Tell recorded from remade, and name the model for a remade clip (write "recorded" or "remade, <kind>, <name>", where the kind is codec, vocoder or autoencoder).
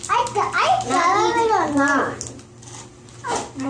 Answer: recorded